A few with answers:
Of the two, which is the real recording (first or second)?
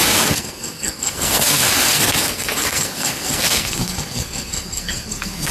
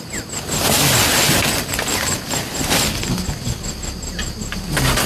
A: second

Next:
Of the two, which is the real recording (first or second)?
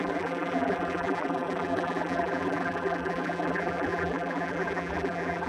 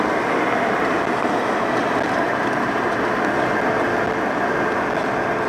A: second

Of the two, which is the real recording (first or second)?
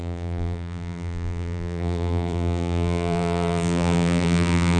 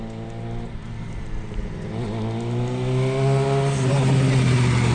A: second